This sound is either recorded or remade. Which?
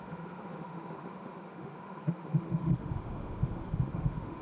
remade